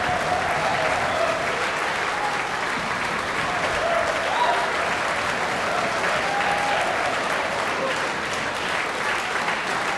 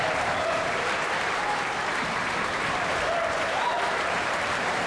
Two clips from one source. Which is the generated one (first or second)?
second